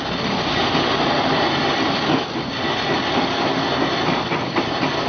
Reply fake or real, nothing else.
real